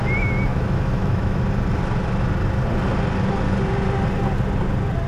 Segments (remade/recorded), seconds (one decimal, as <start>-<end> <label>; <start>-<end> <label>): 0.0-0.5 recorded; 0.5-1.4 remade; 1.4-5.1 recorded